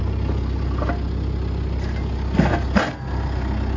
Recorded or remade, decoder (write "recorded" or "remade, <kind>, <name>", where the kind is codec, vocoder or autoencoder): recorded